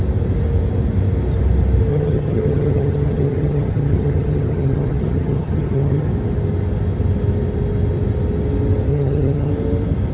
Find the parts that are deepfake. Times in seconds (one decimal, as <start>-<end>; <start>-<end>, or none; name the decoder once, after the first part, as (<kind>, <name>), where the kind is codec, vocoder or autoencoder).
1.9-6.1 (vocoder, HiFi-GAN); 8.9-9.5